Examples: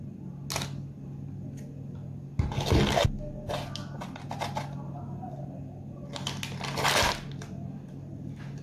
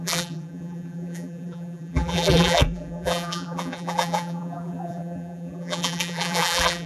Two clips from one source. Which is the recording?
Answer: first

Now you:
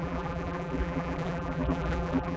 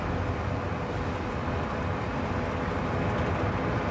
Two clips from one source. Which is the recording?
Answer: second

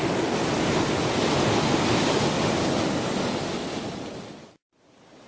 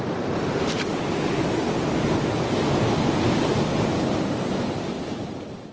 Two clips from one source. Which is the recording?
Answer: first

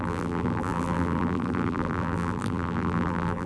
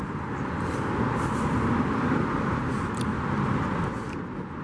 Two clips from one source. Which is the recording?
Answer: second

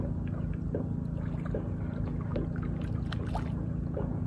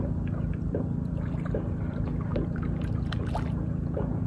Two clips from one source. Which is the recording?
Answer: first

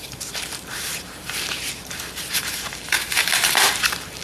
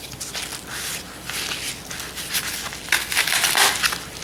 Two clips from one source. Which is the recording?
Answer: second